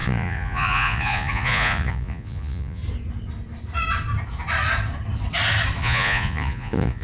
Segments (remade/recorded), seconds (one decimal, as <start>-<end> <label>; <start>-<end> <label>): 0.0-2.8 remade; 2.8-5.8 recorded; 5.8-7.0 remade